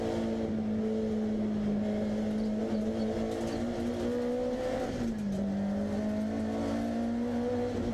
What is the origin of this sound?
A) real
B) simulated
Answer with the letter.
A